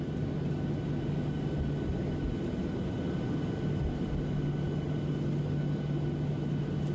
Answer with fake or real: real